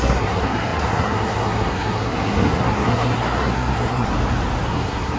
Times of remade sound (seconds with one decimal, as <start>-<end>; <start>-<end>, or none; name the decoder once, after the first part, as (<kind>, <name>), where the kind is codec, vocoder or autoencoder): 0.0-4.1 (codec, SNAC); 4.7-5.2